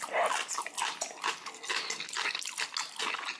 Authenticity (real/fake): real